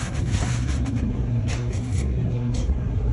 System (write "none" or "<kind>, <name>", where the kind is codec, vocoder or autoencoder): codec, SNAC